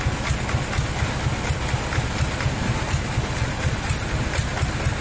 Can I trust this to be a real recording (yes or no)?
yes